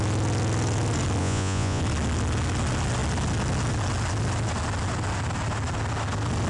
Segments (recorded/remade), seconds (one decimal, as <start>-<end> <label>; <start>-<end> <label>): 0.0-1.2 recorded; 1.2-1.8 remade; 1.8-6.5 recorded